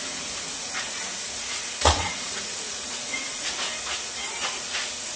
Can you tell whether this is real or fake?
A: fake